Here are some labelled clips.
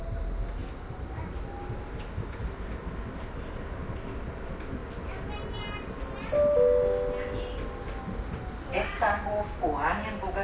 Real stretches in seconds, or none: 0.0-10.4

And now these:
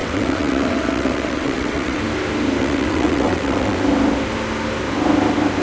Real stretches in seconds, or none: 2.0-2.6; 3.8-5.6

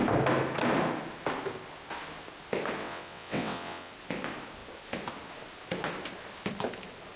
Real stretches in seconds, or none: 0.0-2.8; 3.9-7.2